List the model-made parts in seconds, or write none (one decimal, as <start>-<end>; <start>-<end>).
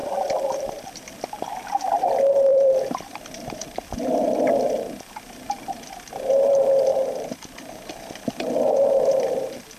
0.0-0.8; 2.5-4.4; 6.9-7.9